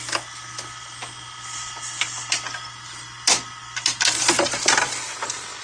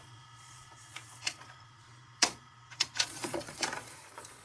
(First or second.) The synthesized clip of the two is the second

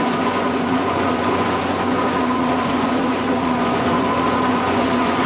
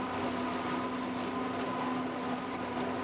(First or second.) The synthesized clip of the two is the first